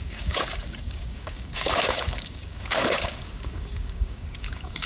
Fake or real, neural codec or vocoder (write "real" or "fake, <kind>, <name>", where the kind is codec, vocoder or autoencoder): fake, codec, DAC